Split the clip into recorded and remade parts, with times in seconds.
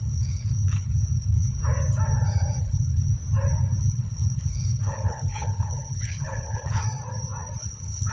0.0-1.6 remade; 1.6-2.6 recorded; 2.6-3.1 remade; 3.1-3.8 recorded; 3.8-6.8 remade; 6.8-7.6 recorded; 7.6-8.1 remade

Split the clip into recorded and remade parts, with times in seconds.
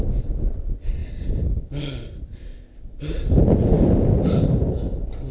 0.0-5.3 recorded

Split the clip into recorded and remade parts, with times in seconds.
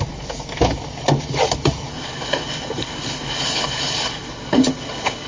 0.0-1.9 recorded; 1.9-5.3 remade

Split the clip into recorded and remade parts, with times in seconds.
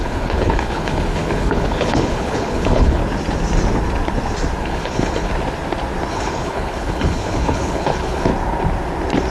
0.0-3.0 remade; 3.0-4.6 recorded; 4.6-5.3 remade; 5.3-6.1 recorded; 6.1-8.3 remade; 8.3-9.3 recorded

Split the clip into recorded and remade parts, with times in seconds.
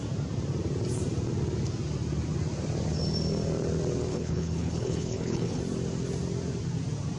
0.0-4.1 recorded; 4.1-5.6 remade; 5.6-7.2 recorded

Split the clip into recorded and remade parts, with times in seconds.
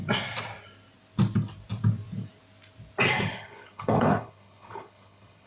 0.0-3.2 recorded; 3.2-5.5 remade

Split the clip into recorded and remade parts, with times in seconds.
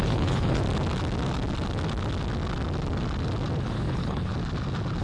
0.0-0.6 remade; 0.6-3.6 recorded; 3.6-4.3 remade; 4.3-5.0 recorded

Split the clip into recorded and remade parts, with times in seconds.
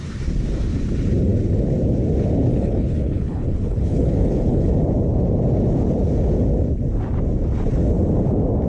0.0-2.5 recorded; 2.5-4.7 remade; 4.7-8.7 recorded